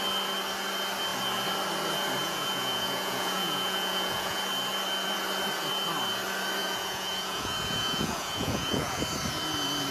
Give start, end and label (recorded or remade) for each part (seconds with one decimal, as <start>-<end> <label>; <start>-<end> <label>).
0.0-2.2 recorded; 2.2-4.4 remade; 4.4-6.6 recorded; 6.6-9.0 remade; 9.0-9.9 recorded